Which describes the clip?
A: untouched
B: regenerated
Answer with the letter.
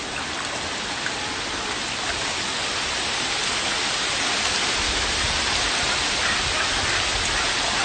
A